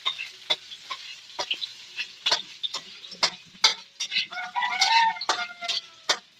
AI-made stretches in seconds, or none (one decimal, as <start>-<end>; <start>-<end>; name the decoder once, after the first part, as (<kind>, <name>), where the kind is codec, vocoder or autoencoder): 1.7-3.2 (vocoder, BigVGAN v2)